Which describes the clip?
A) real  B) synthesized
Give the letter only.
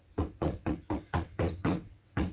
B